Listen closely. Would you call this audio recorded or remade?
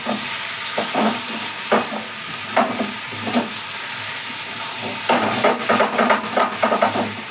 recorded